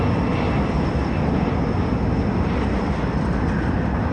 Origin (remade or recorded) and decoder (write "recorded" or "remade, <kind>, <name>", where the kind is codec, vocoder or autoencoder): recorded